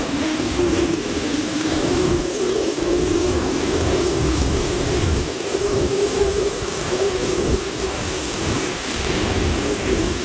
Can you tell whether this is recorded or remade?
remade